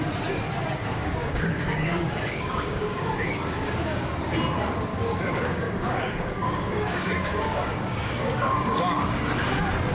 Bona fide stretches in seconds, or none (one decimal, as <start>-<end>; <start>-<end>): 0.0-0.9; 4.1-4.9; 9.2-9.9